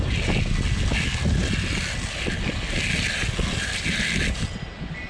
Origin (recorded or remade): recorded